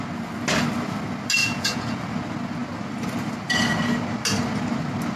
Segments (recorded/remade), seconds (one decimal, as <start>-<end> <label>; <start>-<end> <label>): 0.0-1.4 recorded; 1.4-2.0 remade; 2.0-5.2 recorded

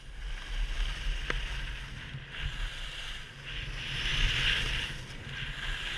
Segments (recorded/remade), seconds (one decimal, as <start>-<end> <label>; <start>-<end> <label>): 0.0-6.0 recorded

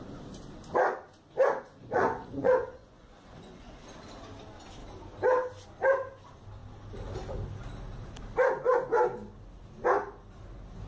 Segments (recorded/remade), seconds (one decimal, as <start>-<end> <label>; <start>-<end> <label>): 0.0-1.8 recorded; 1.8-3.8 remade; 3.8-10.9 recorded

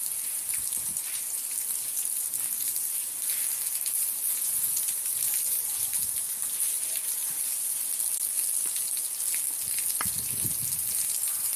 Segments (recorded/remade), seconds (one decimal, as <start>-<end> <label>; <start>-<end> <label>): 0.0-4.3 recorded; 4.3-4.8 remade; 4.8-11.6 recorded